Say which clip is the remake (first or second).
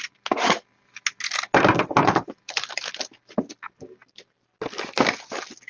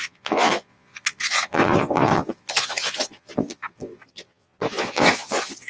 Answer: second